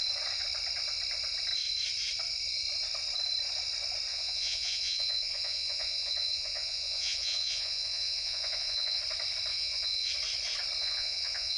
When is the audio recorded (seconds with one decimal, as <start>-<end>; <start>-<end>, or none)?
0.0-4.1; 9.0-9.5; 10.1-10.8